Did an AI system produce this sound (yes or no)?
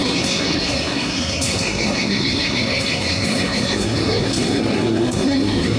yes